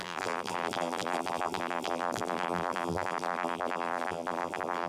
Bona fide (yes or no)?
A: no